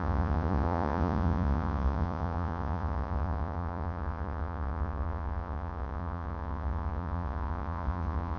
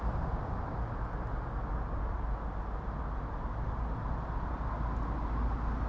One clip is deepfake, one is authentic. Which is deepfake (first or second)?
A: first